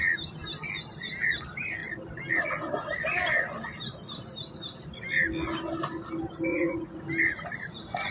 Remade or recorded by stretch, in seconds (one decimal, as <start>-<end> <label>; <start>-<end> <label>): 0.0-6.5 recorded; 6.5-7.0 remade; 7.0-8.1 recorded